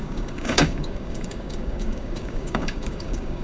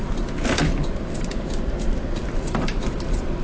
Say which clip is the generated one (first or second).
first